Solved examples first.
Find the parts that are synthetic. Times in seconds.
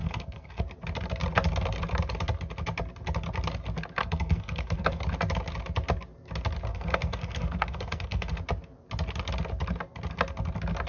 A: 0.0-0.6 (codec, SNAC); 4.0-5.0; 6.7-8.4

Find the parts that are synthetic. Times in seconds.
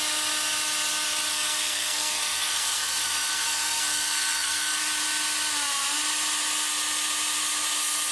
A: 1.3-4.8 (codec, SNAC)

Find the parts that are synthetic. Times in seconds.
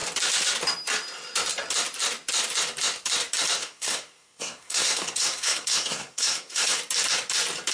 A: 3.6-6.8 (codec, SNAC)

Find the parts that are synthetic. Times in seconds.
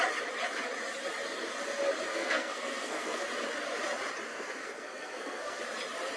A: 2.1-3.2 (codec, SNAC); 4.3-5.6